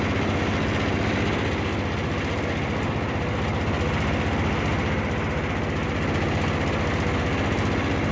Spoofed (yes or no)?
no